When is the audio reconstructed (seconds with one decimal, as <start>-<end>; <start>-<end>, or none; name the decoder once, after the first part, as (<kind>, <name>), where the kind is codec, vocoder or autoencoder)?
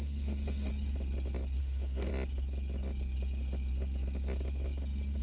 0.0-0.7 (autoencoder, DAC-VAE); 1.6-2.1